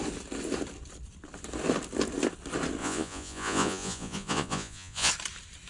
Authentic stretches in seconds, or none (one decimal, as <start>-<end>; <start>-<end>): 0.0-2.8; 5.1-5.7